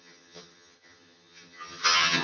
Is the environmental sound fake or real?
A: fake